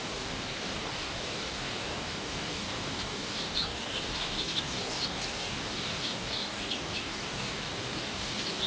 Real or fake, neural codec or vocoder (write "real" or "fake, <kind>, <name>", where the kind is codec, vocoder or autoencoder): fake, codec, DAC